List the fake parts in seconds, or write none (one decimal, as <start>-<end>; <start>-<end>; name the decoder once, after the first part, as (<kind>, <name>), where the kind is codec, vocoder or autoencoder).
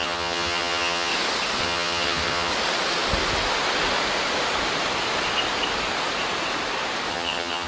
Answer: 0.0-1.1 (vocoder, HiFi-GAN); 1.6-2.5; 7.1-7.7